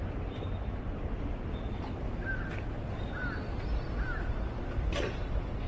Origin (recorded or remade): recorded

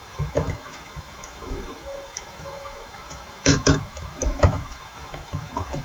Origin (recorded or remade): remade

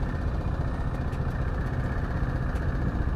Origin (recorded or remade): recorded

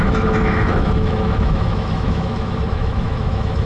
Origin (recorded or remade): remade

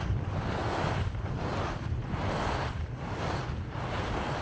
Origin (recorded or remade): recorded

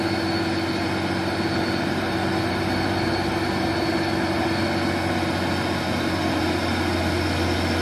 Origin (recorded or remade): recorded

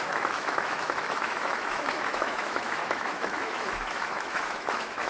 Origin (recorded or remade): remade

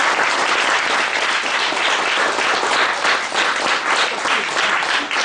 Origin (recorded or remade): recorded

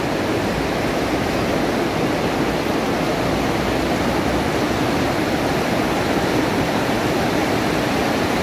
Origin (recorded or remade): recorded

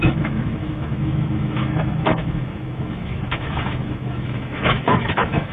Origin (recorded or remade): remade